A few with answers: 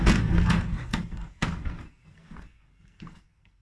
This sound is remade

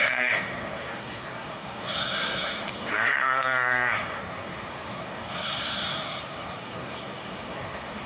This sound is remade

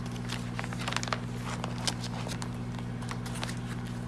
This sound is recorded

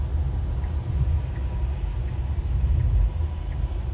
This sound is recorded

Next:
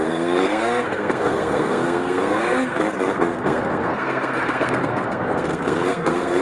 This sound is remade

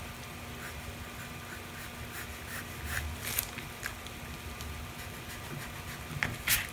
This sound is recorded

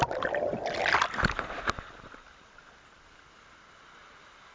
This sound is recorded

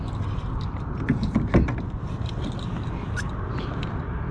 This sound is recorded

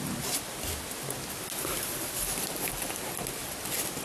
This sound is recorded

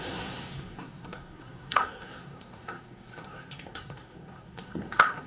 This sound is remade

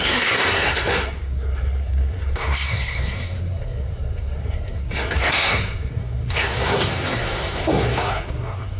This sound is remade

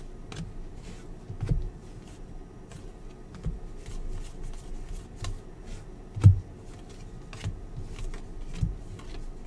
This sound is recorded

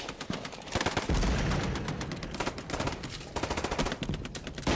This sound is recorded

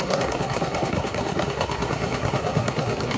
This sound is remade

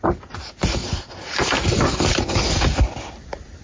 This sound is recorded